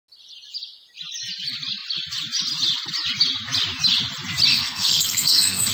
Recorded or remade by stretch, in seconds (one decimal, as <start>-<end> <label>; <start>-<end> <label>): 0.0-4.5 recorded; 4.5-5.7 remade